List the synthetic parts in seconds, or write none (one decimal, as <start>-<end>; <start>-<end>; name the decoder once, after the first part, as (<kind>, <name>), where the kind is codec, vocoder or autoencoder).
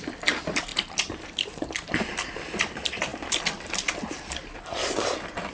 0.0-5.5 (vocoder, BigVGAN v2)